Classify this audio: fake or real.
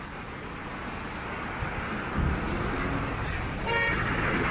real